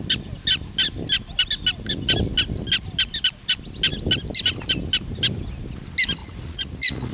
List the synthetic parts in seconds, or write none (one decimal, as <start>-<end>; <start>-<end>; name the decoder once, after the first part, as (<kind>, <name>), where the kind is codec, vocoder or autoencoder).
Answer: 6.2-7.1 (vocoder, Vocos)